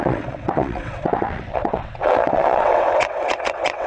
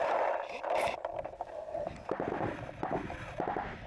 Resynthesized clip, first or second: first